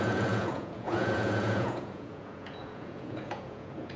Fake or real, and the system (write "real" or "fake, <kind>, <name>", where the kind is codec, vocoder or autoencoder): fake, vocoder, Vocos